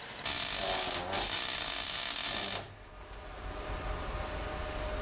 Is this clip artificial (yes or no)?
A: no